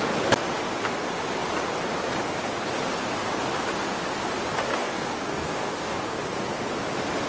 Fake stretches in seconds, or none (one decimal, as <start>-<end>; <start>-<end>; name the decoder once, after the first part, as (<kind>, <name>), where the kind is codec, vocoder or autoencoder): 4.7-6.2 (codec, DAC)